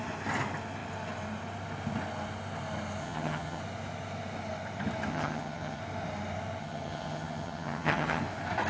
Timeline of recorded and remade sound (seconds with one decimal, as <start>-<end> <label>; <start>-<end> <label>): 0.0-3.0 recorded; 3.0-3.6 remade; 3.6-5.1 recorded; 5.1-5.8 remade; 5.8-6.6 recorded; 6.6-8.2 remade; 8.2-8.7 recorded